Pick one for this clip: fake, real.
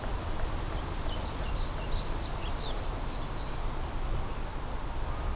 real